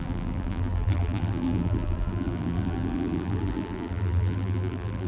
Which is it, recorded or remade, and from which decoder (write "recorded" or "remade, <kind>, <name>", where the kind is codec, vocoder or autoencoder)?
remade, vocoder, BigVGAN v2